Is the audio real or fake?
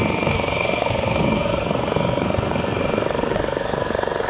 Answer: fake